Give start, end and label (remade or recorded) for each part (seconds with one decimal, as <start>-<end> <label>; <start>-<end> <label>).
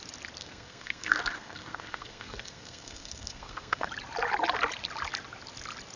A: 0.0-0.4 recorded; 0.4-3.9 remade; 3.9-6.0 recorded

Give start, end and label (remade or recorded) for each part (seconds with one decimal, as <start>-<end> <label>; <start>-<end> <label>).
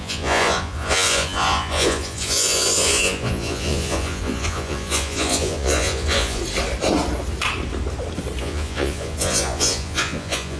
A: 0.0-6.4 remade; 6.4-8.4 recorded; 8.4-10.6 remade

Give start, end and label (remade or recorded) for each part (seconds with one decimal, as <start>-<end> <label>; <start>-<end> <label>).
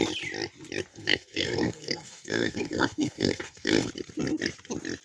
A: 0.0-0.9 recorded; 0.9-3.9 remade; 3.9-5.0 recorded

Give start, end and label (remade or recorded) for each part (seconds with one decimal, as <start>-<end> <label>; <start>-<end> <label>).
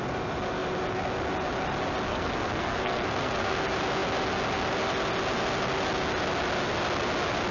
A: 0.0-2.1 recorded; 2.1-3.6 remade; 3.6-7.5 recorded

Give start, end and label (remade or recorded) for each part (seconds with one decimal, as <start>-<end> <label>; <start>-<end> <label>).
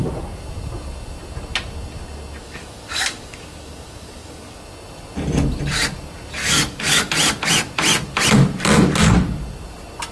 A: 0.0-2.4 recorded; 2.4-4.6 remade; 4.6-6.4 recorded; 6.4-7.1 remade; 7.1-10.1 recorded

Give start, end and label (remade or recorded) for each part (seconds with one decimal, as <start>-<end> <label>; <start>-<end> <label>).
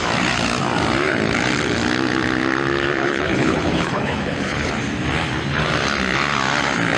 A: 0.0-3.0 recorded; 3.0-4.7 remade; 4.7-7.0 recorded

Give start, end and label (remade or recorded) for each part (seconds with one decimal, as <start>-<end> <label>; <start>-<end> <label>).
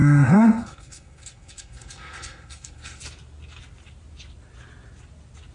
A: 0.0-3.0 remade; 3.0-5.5 recorded